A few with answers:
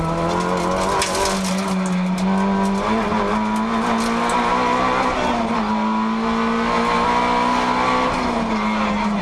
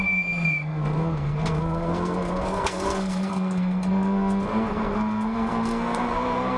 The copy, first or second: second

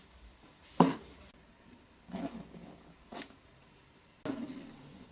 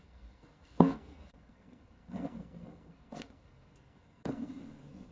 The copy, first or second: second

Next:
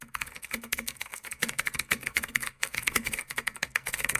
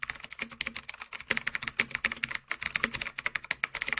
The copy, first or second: first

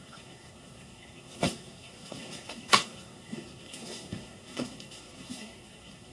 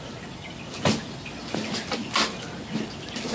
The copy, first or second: first